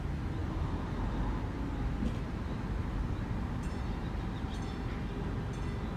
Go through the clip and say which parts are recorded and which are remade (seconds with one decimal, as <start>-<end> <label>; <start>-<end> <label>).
0.0-6.0 recorded